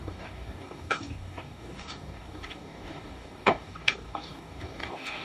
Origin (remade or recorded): remade